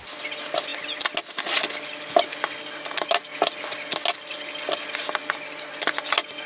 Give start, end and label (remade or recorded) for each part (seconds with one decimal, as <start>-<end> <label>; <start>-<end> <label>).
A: 0.0-6.5 recorded